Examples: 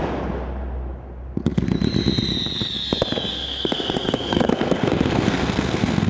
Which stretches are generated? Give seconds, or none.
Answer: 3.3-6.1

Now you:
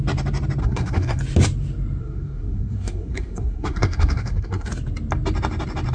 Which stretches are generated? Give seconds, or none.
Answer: 0.6-1.2; 2.0-4.7

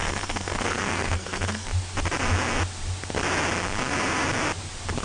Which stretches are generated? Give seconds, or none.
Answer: 0.0-1.7

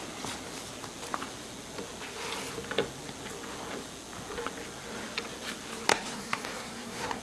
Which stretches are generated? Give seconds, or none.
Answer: 5.9-7.2

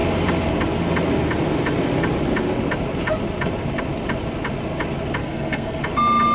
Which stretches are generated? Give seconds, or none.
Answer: 5.2-5.8

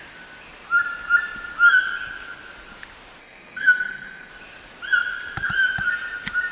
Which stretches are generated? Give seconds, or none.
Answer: 3.2-4.3